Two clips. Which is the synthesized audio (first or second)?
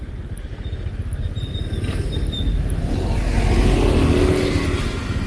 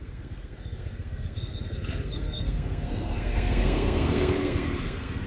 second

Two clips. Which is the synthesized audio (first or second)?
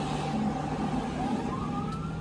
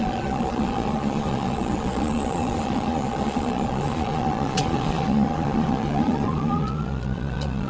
second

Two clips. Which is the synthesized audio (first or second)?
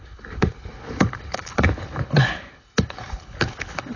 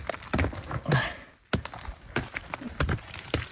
first